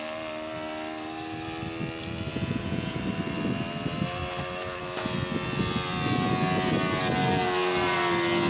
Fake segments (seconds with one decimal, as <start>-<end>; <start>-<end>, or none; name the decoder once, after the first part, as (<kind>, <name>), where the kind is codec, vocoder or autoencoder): 2.3-3.0 (vocoder, Vocos)